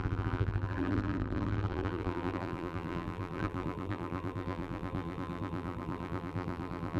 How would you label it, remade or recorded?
remade